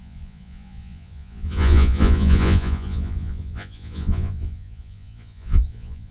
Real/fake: fake